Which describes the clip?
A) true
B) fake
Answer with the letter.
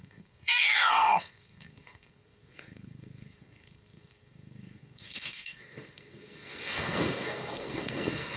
B